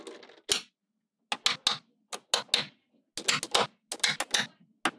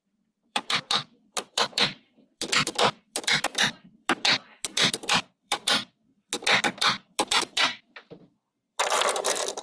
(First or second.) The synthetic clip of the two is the second